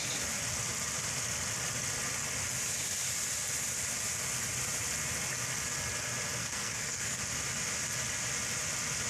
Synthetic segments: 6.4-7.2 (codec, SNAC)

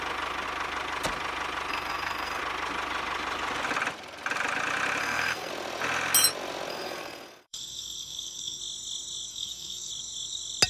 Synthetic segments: 1.7-2.4 (codec, SNAC); 5.0-5.5; 6.7-8.6; 9.3-9.9

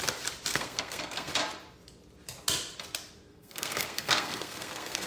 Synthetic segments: 0.5-1.3 (codec, SNAC); 3.3-5.1

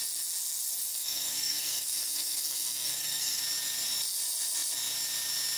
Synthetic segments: 0.9-3.4 (codec, SNAC)

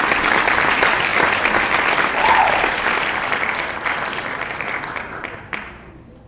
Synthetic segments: none

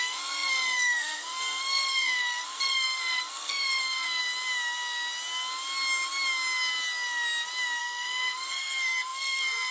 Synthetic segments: 0.0-4.2 (codec, SNAC); 7.8-9.7